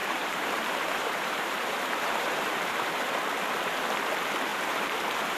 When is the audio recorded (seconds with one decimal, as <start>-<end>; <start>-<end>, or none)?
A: 3.2-4.5